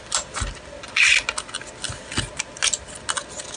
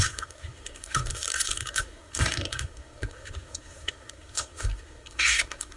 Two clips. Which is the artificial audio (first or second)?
second